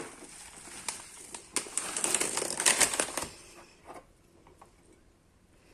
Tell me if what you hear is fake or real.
real